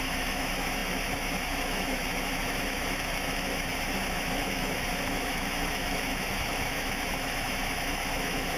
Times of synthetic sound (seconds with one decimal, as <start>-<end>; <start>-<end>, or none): 0.0-8.6